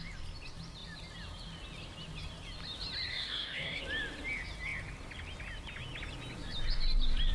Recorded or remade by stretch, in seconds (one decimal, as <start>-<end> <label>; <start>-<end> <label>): 0.0-3.1 recorded; 3.1-3.8 remade; 3.8-7.3 recorded